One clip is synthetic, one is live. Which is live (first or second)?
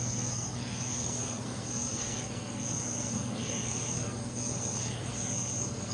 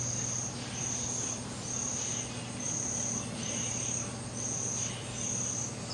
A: second